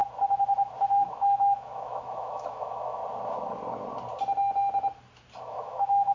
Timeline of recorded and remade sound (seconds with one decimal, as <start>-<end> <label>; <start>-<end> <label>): 0.0-1.0 recorded; 1.0-3.0 remade; 3.0-5.4 recorded; 5.4-6.1 remade